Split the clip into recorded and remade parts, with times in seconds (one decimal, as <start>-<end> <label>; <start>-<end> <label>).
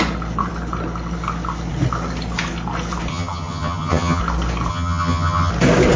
0.0-3.1 recorded; 3.1-4.2 remade; 4.2-4.7 recorded; 4.7-5.5 remade; 5.5-6.0 recorded